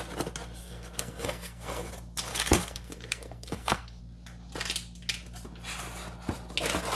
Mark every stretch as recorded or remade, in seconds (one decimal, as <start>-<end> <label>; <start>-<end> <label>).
0.0-0.6 recorded; 0.6-1.9 remade; 1.9-2.3 recorded; 2.3-4.0 remade; 4.0-7.0 recorded